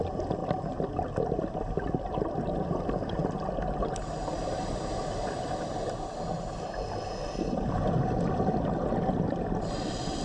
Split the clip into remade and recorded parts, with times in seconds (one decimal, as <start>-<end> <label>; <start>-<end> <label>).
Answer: 0.0-10.2 recorded